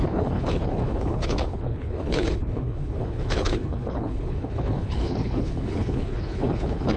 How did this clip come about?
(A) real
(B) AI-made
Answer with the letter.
B